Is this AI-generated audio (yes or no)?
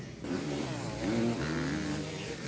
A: no